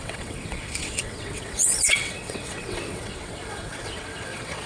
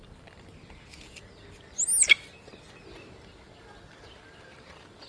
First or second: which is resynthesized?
first